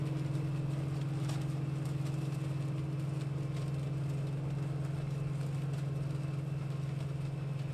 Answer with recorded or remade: recorded